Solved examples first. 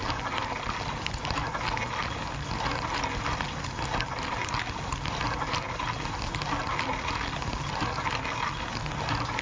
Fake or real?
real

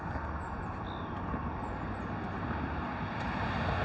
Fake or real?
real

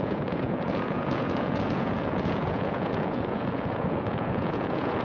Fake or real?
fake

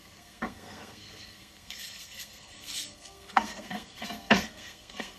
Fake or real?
fake